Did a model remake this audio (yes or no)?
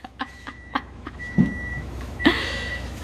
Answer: yes